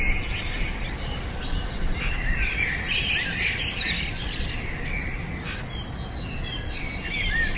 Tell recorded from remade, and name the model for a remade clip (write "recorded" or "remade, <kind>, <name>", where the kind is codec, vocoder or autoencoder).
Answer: recorded